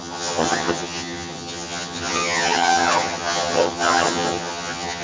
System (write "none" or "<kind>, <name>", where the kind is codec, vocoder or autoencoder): vocoder, HiFi-GAN